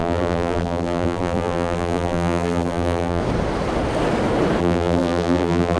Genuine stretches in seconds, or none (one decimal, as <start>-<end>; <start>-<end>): 3.2-4.6